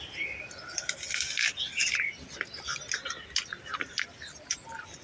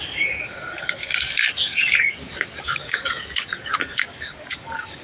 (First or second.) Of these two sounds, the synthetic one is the second